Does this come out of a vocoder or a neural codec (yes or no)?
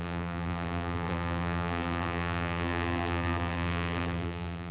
yes